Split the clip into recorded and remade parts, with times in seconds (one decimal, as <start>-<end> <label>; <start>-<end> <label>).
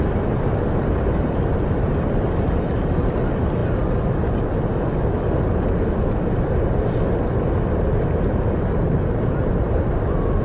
0.0-10.4 recorded